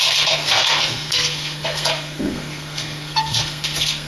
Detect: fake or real fake